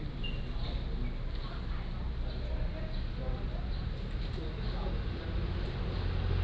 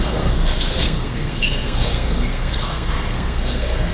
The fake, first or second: second